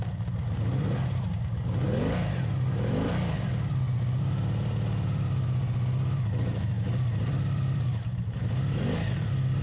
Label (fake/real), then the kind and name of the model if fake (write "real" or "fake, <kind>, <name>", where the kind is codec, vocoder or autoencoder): fake, vocoder, BigVGAN v2